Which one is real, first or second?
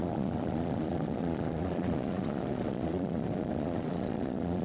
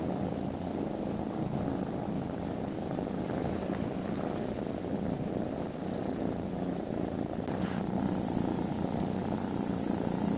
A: second